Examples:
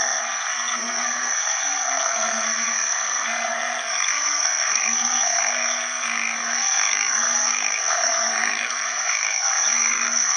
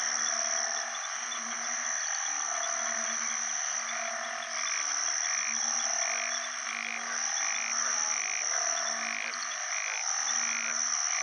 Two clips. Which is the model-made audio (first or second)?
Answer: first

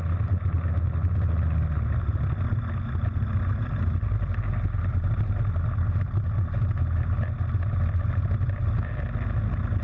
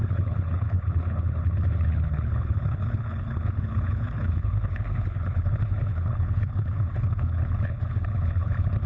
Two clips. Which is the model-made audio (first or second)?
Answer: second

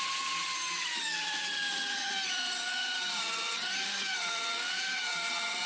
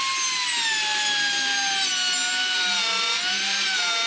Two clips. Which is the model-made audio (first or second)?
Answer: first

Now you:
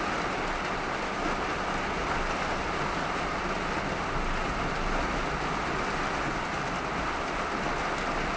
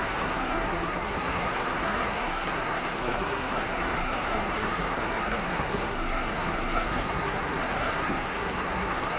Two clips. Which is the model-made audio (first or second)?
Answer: second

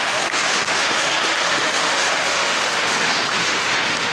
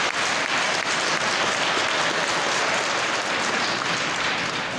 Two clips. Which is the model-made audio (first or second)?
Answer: first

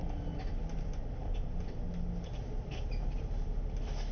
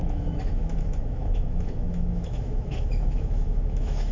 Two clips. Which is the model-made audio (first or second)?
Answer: second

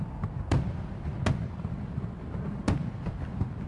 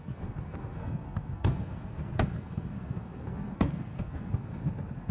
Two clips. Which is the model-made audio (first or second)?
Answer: second